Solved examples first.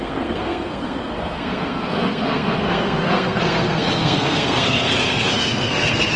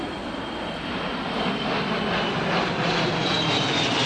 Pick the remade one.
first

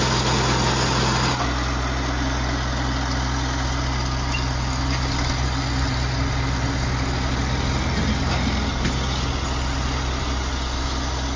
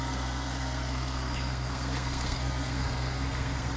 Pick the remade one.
second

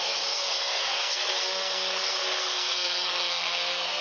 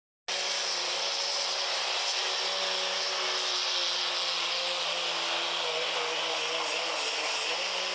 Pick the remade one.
first